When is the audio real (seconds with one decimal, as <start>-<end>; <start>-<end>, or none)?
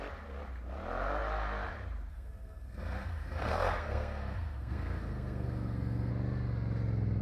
0.0-2.1; 6.1-7.2